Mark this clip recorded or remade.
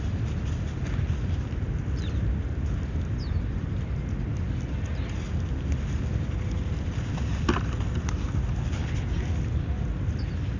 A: recorded